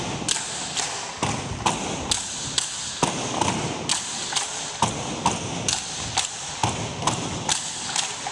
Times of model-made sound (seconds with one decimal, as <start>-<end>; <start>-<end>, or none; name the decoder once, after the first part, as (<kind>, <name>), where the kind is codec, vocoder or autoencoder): none

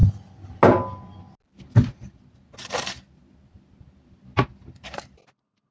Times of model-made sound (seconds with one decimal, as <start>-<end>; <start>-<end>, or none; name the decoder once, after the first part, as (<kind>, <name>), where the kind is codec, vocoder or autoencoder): none